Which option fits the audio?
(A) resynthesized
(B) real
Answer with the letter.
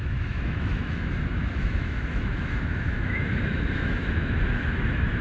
A